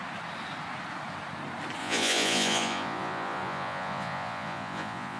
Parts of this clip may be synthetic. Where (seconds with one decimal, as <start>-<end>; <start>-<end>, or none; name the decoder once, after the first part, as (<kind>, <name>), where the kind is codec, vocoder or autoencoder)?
1.8-5.2 (vocoder, Vocos)